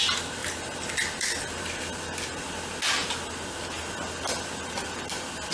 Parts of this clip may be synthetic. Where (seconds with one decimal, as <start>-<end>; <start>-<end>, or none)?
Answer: none